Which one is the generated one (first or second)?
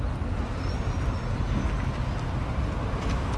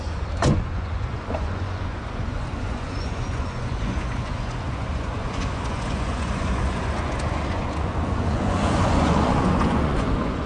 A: second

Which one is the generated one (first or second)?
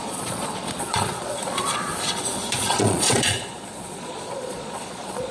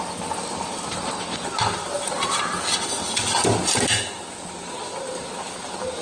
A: first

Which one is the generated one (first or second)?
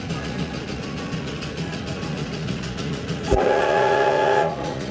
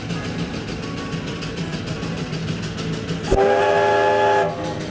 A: first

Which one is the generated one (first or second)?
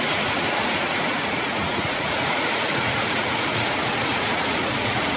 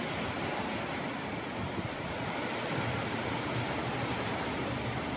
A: first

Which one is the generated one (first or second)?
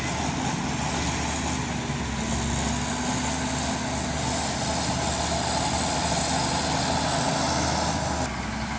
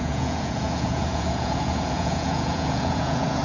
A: second